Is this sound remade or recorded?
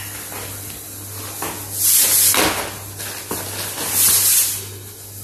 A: recorded